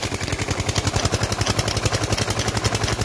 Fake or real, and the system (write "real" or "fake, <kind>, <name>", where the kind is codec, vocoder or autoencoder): real